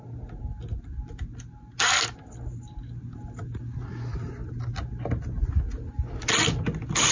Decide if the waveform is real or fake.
real